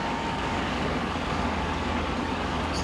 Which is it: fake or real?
fake